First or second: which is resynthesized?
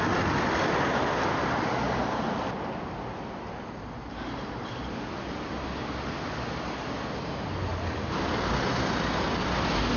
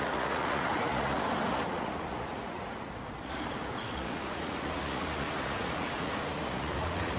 second